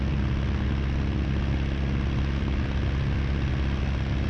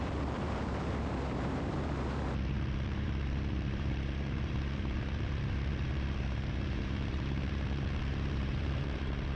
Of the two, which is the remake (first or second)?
second